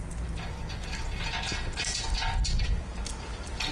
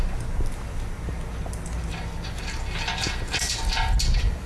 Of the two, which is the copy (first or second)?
first